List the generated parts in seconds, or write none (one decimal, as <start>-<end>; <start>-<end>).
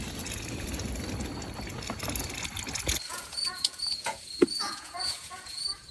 3.1-5.9